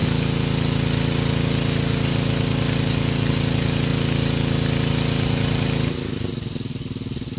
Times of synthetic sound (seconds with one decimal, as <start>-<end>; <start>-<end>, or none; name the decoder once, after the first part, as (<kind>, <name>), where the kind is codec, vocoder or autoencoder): none